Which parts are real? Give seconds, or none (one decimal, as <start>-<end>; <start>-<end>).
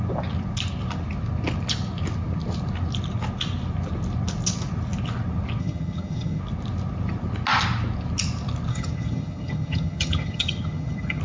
0.0-5.6; 6.4-8.7